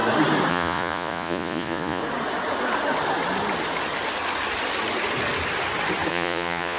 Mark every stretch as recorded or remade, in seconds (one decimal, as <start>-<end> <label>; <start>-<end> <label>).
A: 0.0-0.5 recorded; 0.5-2.0 remade; 2.0-6.1 recorded; 6.1-6.8 remade